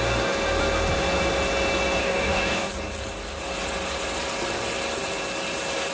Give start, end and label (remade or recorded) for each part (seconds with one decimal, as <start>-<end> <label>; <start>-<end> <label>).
0.0-2.0 recorded; 2.0-2.7 remade; 2.7-5.9 recorded